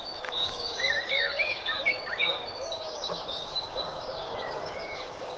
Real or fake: fake